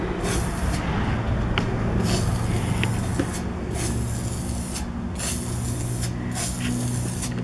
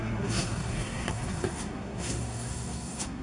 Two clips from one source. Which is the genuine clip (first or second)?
first